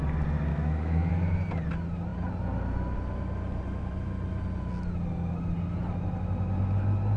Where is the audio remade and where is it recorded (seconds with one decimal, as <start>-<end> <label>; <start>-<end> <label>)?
0.0-0.5 recorded; 0.5-1.1 remade; 1.1-7.2 recorded